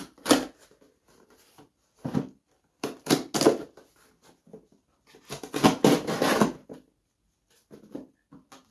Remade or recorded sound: recorded